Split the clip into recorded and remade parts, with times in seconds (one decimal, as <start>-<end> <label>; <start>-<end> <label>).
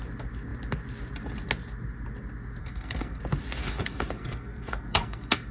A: 0.0-2.6 recorded; 2.6-3.2 remade; 3.2-3.6 recorded; 3.6-5.5 remade